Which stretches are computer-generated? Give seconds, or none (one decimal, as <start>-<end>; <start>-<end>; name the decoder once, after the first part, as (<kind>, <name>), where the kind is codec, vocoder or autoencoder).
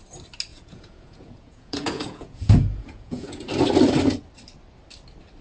0.5-3.4 (vocoder, Vocos)